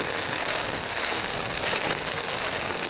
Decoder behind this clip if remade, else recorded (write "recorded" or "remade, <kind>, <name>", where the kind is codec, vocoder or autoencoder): remade, codec, SNAC